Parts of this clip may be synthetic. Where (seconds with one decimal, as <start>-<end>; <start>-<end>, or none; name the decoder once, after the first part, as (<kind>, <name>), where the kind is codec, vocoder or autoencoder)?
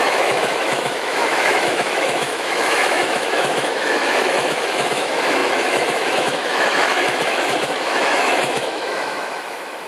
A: 0.0-9.9 (autoencoder, DAC-VAE)